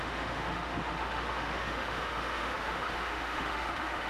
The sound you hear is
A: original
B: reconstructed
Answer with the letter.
B